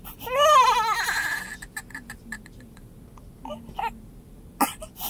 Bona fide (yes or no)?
yes